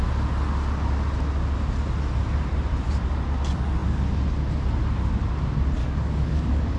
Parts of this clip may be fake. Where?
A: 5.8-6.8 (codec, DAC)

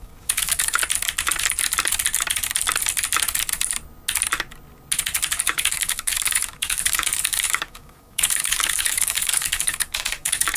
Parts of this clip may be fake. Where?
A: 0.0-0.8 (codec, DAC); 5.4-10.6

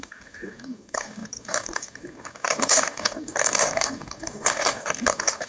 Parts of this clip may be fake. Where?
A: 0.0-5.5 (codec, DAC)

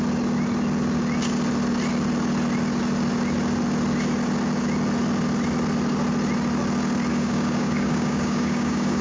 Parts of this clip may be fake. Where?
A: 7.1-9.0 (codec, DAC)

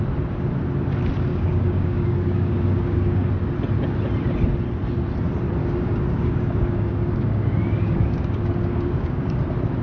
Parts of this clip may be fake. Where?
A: 1.3-3.3 (codec, DAC); 5.6-9.4